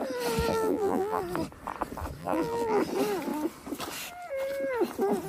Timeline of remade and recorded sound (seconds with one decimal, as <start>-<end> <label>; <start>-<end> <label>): 0.0-0.5 recorded; 0.5-1.2 remade; 1.2-2.2 recorded; 2.2-2.8 remade; 2.8-5.3 recorded